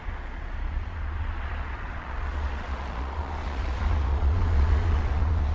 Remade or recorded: remade